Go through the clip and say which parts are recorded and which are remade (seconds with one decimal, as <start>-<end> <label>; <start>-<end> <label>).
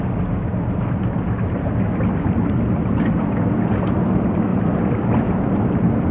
0.0-6.1 recorded